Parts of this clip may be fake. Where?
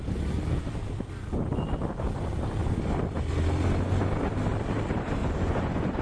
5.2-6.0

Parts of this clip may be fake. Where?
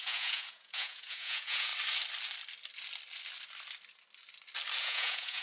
0.0-1.7; 4.8-5.4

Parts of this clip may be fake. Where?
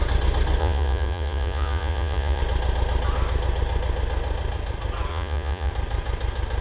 0.6-2.4; 5.1-5.7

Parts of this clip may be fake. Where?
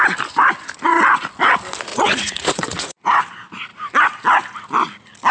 1.9-3.2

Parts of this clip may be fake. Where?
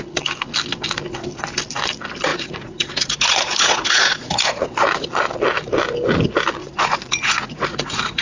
2.3-4.6; 6.6-8.2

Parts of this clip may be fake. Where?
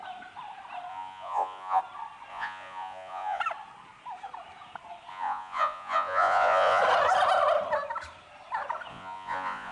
0.9-1.8; 2.3-3.4; 5.1-6.8; 8.9-9.7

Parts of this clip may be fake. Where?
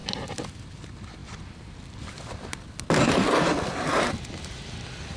none